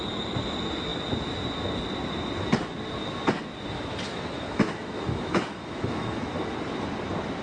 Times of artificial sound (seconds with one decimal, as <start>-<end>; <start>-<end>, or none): 4.1-6.3